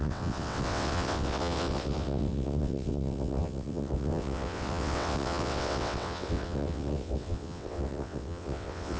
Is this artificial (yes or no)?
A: yes